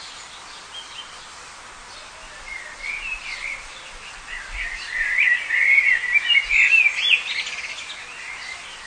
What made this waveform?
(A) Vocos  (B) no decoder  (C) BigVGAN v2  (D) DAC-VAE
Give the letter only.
B